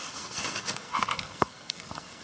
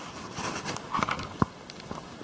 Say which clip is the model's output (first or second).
first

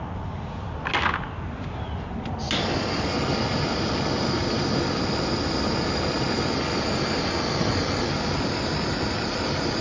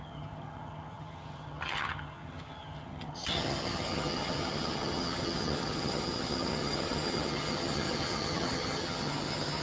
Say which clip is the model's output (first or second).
second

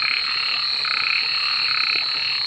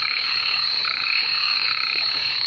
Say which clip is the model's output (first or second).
second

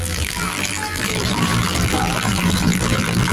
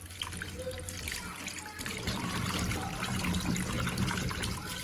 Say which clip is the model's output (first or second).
first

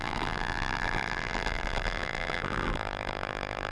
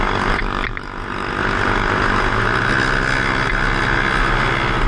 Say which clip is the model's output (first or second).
first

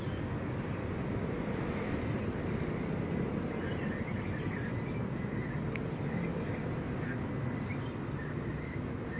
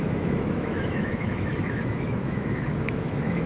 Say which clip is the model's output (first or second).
second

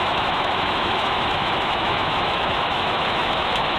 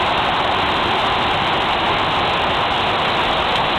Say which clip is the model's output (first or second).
first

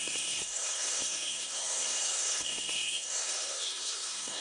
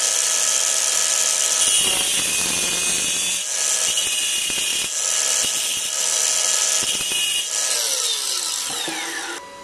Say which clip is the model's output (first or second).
first